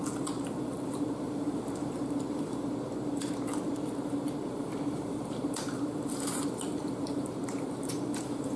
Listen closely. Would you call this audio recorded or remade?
remade